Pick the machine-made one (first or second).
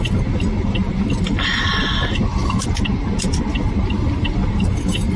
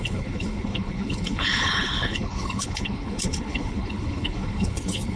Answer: second